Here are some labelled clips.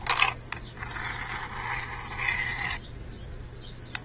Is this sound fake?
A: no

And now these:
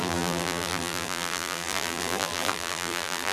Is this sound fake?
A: yes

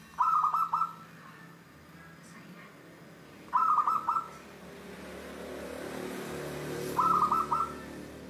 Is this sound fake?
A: no